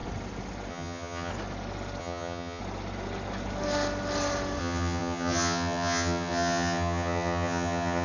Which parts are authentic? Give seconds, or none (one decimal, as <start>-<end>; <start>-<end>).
0.0-0.7; 1.3-2.0; 2.6-4.6